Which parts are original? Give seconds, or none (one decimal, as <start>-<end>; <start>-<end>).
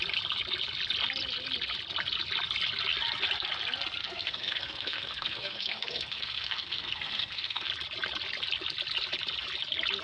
0.0-4.0; 7.7-10.0